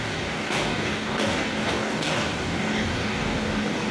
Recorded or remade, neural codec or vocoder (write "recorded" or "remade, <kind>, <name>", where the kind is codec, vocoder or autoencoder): remade, codec, DAC